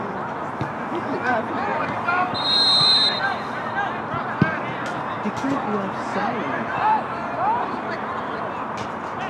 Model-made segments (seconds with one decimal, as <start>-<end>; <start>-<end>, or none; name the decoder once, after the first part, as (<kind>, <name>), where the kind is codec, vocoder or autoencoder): 1.7-3.4 (vocoder, BigVGAN v2); 6.1-8.5